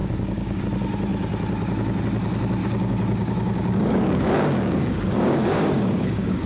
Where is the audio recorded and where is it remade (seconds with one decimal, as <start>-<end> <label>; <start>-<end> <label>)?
0.0-0.6 remade; 0.6-2.6 recorded; 2.6-6.5 remade